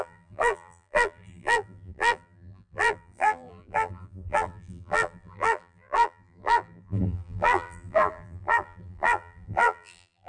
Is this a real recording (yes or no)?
no